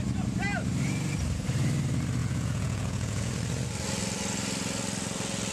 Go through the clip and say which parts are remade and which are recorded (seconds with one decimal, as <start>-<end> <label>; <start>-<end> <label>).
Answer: 0.0-2.2 recorded; 2.2-3.3 remade; 3.3-5.5 recorded